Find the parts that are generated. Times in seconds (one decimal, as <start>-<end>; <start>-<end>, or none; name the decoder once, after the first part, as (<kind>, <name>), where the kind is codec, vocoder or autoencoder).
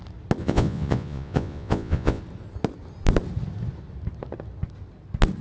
0.4-2.2 (vocoder, Vocos)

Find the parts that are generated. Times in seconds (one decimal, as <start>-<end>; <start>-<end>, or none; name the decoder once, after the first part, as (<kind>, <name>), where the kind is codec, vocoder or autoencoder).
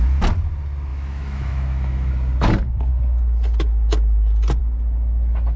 0.9-2.1 (autoencoder, DAC-VAE)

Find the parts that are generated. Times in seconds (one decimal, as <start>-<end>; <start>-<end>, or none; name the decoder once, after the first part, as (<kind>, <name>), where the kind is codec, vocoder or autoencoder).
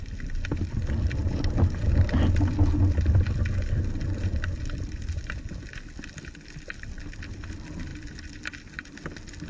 none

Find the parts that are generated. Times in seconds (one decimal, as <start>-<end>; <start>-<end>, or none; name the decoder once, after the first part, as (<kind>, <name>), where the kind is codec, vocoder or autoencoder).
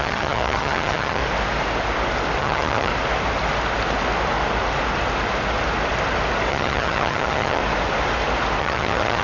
0.0-1.2 (vocoder, HiFi-GAN); 2.4-2.9; 6.5-7.6; 8.6-9.2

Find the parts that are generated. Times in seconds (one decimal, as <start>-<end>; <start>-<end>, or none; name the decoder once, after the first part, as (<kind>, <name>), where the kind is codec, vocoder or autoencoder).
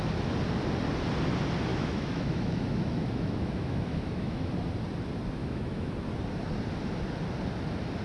1.7-4.5 (autoencoder, DAC-VAE); 5.4-5.9